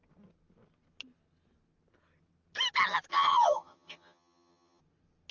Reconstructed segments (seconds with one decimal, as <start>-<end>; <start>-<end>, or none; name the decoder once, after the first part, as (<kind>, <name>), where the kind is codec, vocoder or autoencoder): 3.1-4.8 (vocoder, HiFi-GAN)